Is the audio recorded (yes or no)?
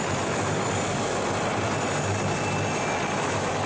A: yes